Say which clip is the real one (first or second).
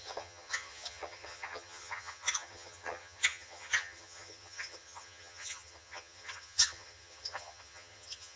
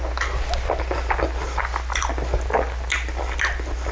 second